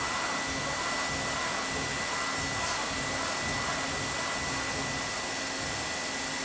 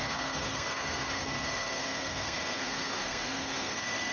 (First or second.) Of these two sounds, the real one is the first